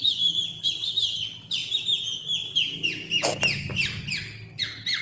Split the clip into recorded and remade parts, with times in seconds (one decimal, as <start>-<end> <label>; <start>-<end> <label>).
0.0-1.6 remade; 1.6-4.6 recorded; 4.6-5.0 remade

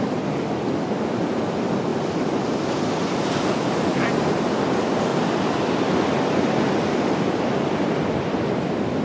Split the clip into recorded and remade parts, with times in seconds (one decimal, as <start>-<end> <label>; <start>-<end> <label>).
0.0-5.1 recorded; 5.1-8.4 remade; 8.4-9.0 recorded

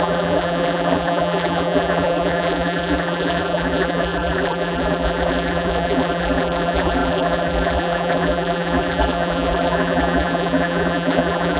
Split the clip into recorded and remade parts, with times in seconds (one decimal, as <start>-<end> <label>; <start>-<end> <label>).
0.0-11.6 remade

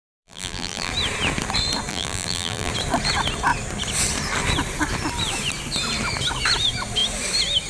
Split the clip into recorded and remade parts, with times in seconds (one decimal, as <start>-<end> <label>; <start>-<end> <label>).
0.0-0.9 remade; 0.9-1.9 recorded; 1.9-2.7 remade; 2.7-7.7 recorded

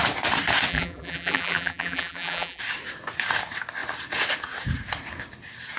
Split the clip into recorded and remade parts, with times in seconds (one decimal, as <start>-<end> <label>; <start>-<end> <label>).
0.0-0.7 recorded; 0.7-2.6 remade; 2.6-5.8 recorded

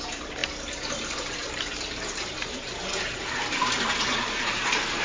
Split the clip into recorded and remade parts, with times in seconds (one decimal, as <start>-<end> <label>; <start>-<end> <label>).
0.0-5.0 remade

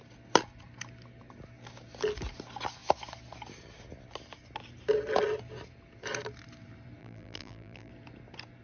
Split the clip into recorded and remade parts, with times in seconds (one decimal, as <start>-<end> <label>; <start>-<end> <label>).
0.0-7.0 recorded; 7.0-7.9 remade; 7.9-8.6 recorded